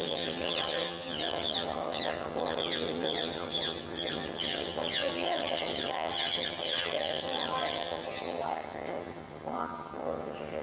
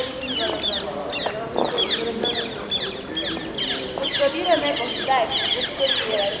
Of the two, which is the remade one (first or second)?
first